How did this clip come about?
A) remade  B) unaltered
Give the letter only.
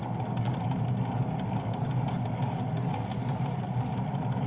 B